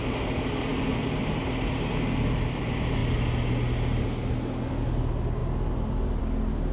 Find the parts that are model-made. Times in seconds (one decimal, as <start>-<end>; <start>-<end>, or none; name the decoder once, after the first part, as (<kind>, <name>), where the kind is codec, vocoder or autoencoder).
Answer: none